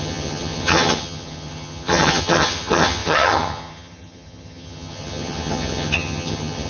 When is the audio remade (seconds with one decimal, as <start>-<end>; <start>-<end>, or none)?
0.0-6.7